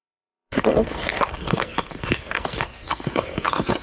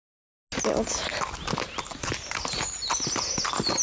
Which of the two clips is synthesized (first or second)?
first